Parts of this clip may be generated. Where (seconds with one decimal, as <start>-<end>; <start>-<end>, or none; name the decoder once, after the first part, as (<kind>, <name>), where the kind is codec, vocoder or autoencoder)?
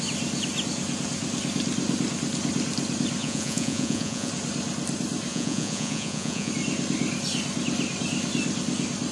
3.2-4.3 (vocoder, Vocos); 5.3-6.5